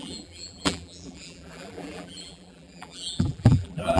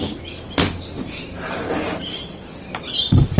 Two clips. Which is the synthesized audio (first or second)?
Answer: first